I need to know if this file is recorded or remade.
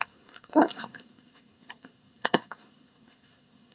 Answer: remade